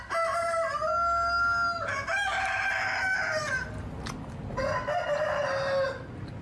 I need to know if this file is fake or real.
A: real